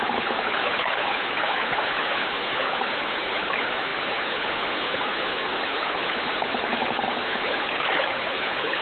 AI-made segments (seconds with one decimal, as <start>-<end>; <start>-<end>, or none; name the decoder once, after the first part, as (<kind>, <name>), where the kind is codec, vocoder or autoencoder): 0.0-8.8 (codec, HILCodec)